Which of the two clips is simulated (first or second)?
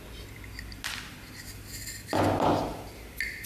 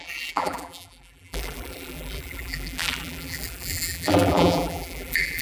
second